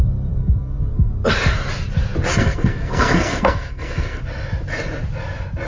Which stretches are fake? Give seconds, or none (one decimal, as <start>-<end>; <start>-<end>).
0.4-1.1; 2.3-4.2

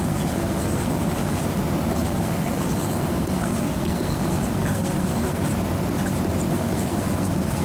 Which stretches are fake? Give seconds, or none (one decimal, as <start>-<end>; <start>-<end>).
0.0-1.4; 2.0-5.5; 6.5-7.6

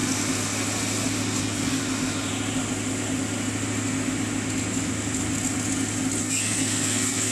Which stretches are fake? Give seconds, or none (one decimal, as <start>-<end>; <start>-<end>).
1.4-1.8; 6.2-7.3

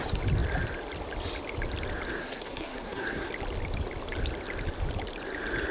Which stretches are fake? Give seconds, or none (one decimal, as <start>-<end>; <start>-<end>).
2.2-3.3